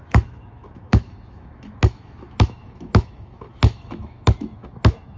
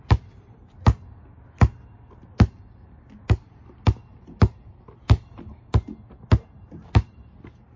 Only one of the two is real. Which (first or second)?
second